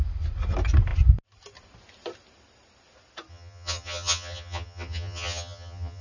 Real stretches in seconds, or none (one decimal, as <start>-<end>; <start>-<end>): 0.0-3.3